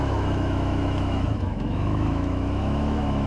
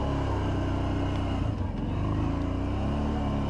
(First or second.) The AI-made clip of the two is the first